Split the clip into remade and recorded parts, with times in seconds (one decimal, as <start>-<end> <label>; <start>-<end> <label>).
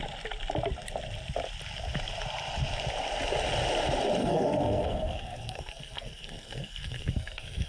0.0-4.2 recorded; 4.2-7.7 remade